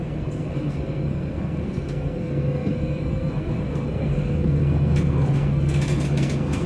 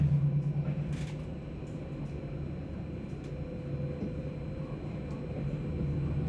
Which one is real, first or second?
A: second